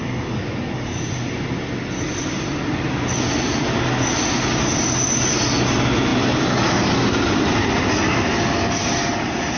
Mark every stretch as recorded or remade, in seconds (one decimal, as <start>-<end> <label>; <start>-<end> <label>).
0.0-9.6 recorded